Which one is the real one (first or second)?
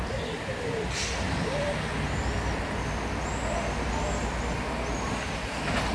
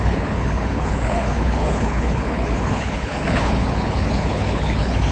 first